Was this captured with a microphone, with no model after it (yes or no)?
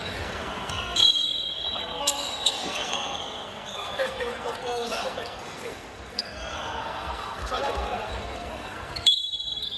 no